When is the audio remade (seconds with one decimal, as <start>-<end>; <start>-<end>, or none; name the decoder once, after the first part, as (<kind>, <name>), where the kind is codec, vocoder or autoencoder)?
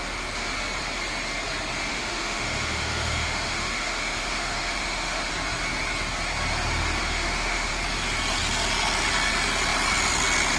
1.9-5.3 (autoencoder, DAC-VAE); 7.0-7.7